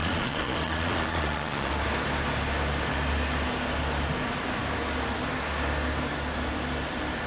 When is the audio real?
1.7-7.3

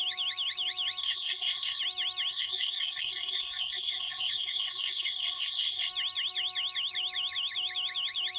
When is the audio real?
0.0-1.0; 1.8-2.3; 5.9-8.4

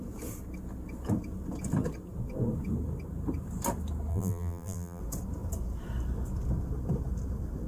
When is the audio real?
0.0-4.1; 5.0-7.7

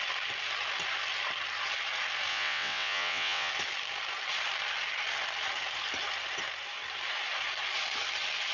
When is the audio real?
0.0-2.3; 3.5-8.5

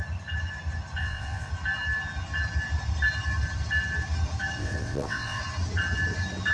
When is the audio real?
0.0-1.0; 1.5-4.6; 5.4-6.5

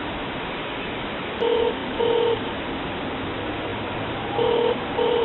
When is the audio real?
none